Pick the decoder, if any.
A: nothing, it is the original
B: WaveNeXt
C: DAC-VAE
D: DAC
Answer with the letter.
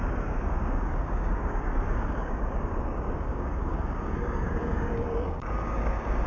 D